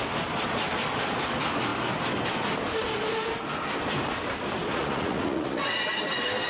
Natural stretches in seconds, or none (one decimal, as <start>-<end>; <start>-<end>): 0.0-4.7; 5.7-6.5